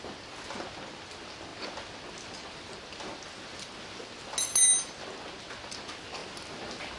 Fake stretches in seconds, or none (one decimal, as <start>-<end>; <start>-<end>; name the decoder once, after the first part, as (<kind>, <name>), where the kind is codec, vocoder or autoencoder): none